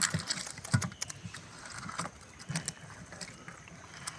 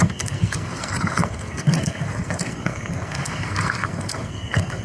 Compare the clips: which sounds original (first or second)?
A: first